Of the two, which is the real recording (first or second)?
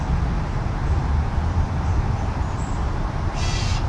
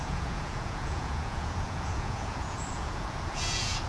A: first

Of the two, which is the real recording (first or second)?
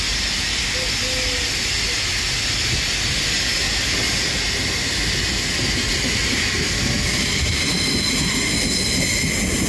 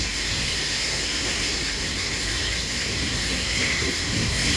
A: first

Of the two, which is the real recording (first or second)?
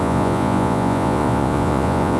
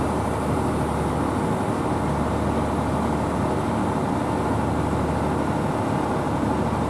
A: second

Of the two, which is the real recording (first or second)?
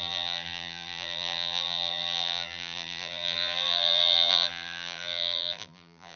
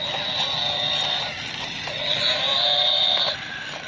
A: second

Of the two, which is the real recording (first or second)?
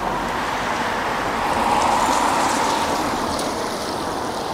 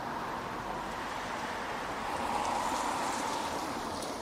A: first